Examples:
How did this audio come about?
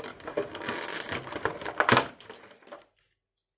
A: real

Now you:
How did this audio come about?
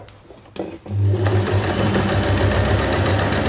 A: real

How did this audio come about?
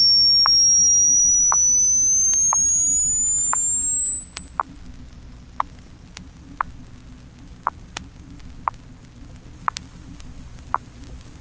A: real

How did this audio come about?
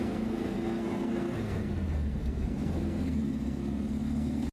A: fake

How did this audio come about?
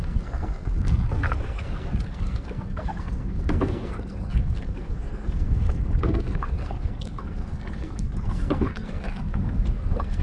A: fake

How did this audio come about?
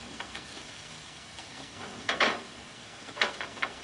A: fake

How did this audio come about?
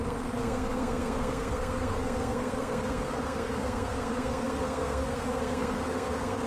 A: fake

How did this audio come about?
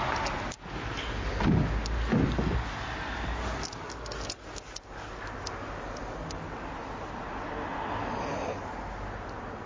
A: real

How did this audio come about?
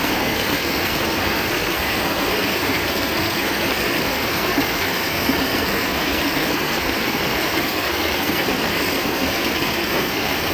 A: fake